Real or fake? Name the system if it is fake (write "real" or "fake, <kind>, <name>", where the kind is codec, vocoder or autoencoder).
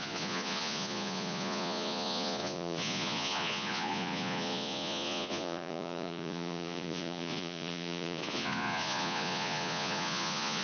fake, vocoder, Vocos